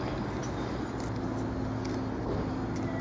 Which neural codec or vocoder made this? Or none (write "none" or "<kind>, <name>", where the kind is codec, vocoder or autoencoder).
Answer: none